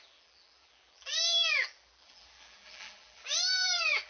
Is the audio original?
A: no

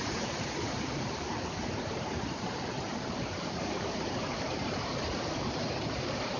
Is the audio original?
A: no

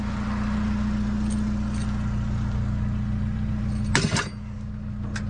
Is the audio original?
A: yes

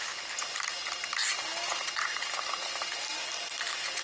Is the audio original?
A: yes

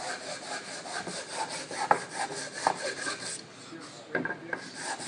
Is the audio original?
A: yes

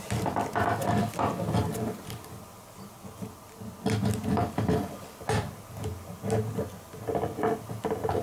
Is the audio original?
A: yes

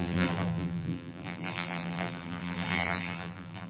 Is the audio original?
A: no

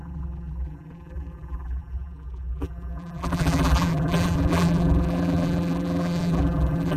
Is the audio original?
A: no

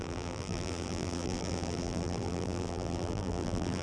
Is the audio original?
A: no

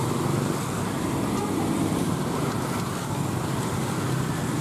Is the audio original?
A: yes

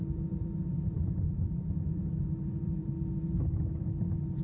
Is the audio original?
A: no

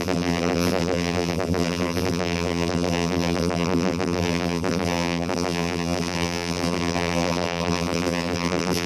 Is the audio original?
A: no